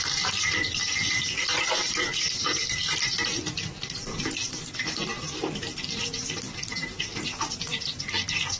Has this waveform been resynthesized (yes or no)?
yes